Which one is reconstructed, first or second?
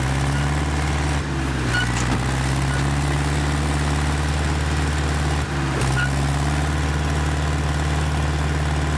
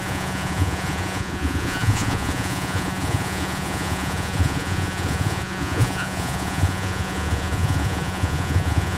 second